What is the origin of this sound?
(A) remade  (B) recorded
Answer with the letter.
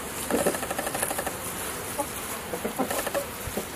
B